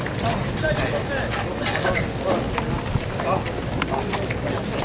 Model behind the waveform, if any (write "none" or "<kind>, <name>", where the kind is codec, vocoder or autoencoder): none